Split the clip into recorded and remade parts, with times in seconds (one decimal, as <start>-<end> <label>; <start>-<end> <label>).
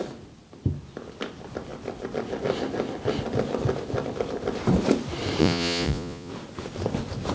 0.0-5.4 recorded; 5.4-6.3 remade; 6.3-7.3 recorded